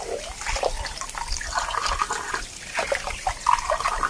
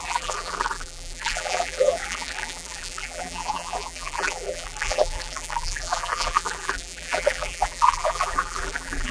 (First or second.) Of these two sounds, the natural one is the first